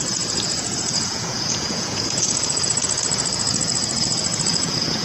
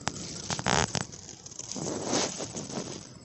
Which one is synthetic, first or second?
first